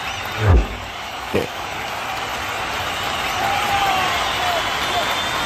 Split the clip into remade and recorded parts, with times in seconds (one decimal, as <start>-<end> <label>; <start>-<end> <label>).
0.0-0.5 recorded; 0.5-1.9 remade; 1.9-5.5 recorded